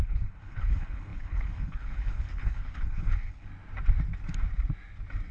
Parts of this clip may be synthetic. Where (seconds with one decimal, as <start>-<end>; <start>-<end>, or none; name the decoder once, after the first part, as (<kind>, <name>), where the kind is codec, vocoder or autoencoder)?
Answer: 0.0-3.5 (codec, HILCodec)